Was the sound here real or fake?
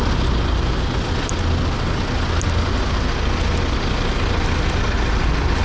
real